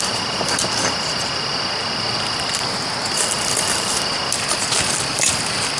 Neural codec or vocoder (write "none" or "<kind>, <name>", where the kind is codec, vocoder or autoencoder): none